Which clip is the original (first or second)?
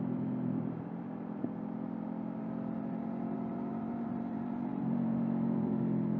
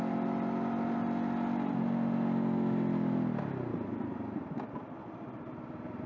second